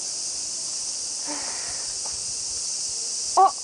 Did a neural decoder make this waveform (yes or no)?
no